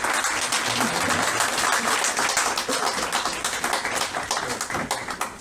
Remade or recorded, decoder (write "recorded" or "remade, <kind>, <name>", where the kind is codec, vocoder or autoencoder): recorded